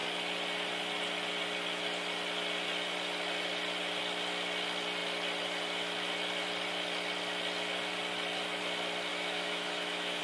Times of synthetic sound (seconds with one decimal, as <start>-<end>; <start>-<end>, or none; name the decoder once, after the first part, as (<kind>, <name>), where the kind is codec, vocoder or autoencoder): 9.1-10.2 (autoencoder, DAC-VAE)